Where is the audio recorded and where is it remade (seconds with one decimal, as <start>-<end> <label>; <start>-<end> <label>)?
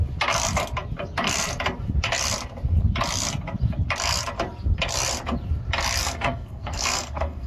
0.0-6.0 recorded; 6.0-7.5 remade